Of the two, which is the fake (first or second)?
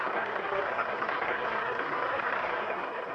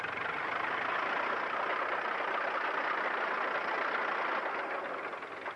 first